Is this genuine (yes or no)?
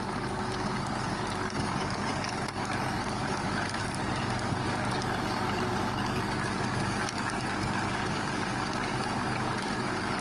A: no